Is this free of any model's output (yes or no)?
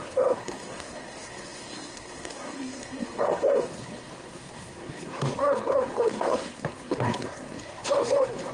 no